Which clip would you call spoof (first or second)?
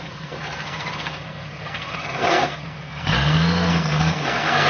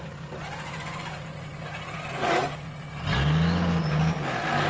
first